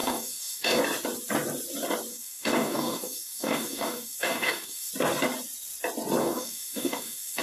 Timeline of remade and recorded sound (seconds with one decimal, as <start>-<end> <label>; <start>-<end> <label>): 0.0-0.8 remade; 0.8-2.1 recorded; 2.1-4.9 remade; 4.9-6.2 recorded; 6.2-7.4 remade